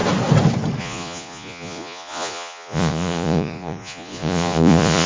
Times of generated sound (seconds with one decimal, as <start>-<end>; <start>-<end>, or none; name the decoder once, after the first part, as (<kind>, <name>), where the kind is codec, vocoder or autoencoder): 0.8-5.1 (vocoder, Vocos)